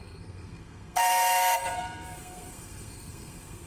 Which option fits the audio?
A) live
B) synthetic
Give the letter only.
B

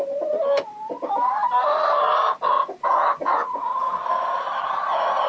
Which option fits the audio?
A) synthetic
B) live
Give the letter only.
B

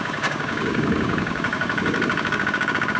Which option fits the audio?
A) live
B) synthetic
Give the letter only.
B